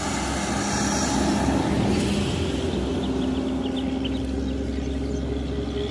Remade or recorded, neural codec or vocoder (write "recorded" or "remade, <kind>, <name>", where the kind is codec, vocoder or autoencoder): recorded